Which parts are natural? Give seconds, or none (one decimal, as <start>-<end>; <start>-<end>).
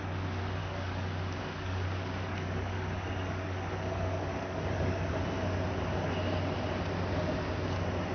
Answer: 0.0-0.6; 5.1-8.1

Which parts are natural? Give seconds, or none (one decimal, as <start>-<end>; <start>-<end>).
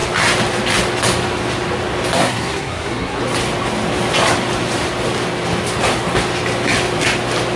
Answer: 0.0-2.2; 3.2-7.6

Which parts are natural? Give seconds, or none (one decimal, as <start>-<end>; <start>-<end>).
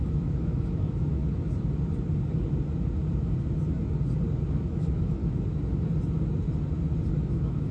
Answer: 1.2-4.5; 5.2-7.1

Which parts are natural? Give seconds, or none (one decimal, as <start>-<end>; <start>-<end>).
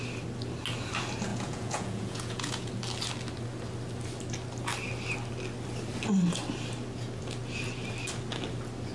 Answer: 0.0-1.3; 2.7-8.9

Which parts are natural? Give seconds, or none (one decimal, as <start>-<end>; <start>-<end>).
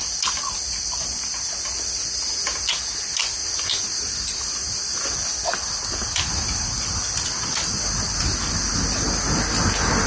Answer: 0.0-3.4; 5.1-10.1